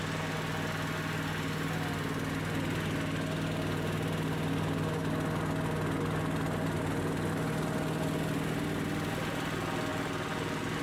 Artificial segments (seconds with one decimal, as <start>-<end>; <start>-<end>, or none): none